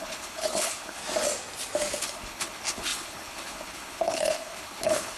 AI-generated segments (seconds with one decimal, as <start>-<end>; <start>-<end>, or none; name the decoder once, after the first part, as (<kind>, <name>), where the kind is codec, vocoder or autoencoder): 0.0-1.0 (codec, HILCodec); 2.0-5.2